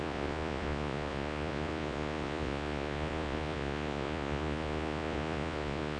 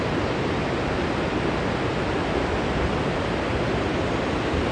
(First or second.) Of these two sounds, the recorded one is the second